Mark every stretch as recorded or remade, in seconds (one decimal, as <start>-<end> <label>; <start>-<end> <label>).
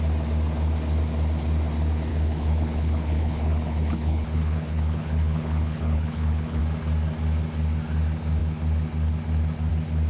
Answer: 0.0-2.1 recorded; 2.1-6.6 remade; 6.6-10.1 recorded